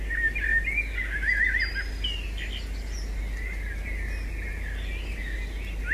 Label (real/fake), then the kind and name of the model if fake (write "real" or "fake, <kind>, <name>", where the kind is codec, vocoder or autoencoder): real